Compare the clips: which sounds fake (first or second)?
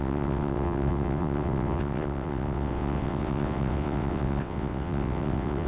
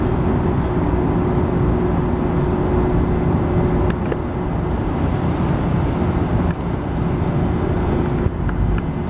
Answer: first